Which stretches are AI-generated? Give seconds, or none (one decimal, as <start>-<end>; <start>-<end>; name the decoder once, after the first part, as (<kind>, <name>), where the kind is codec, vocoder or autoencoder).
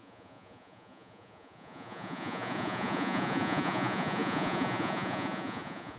0.0-6.0 (vocoder, Vocos)